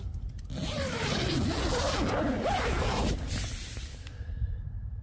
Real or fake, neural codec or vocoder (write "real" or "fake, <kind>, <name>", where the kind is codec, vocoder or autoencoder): real